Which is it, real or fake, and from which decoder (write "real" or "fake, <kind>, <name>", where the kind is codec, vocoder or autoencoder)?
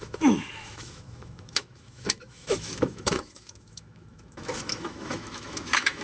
fake, autoencoder, DAC-VAE